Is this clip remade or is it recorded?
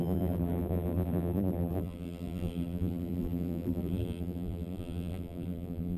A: remade